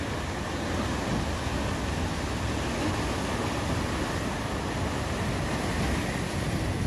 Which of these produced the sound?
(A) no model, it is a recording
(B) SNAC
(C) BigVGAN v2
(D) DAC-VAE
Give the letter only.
A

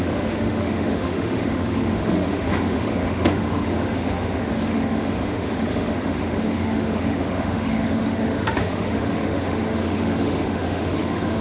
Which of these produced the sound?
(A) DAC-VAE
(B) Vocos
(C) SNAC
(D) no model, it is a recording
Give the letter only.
A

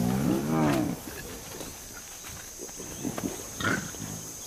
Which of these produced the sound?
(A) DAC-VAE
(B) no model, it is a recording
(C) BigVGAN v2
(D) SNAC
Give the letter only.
B